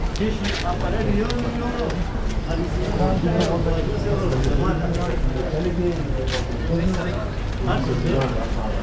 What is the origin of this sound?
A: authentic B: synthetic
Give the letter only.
A